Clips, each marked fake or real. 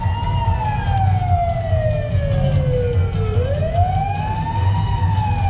real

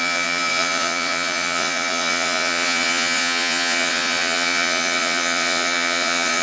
fake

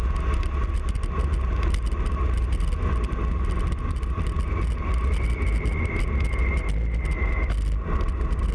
real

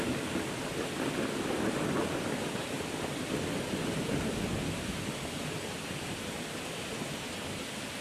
real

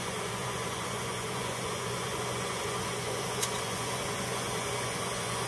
fake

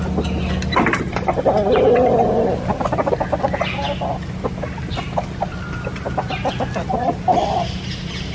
real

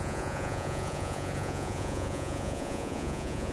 fake